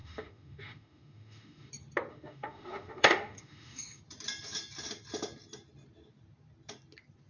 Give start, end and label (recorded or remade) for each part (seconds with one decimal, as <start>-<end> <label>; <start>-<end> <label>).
0.0-1.7 remade; 1.7-2.1 recorded; 2.1-4.0 remade; 4.0-7.3 recorded